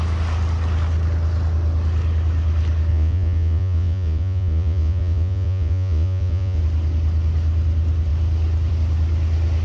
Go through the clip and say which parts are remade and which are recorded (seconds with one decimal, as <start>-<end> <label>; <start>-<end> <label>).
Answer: 0.0-2.9 recorded; 2.9-6.6 remade; 6.6-9.6 recorded